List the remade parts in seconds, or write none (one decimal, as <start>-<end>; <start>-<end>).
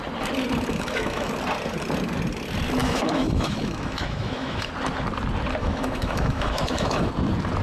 0.7-1.3; 2.8-4.7; 5.6-7.1